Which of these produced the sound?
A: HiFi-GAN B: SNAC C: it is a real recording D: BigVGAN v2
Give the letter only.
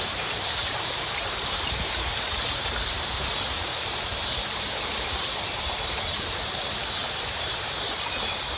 D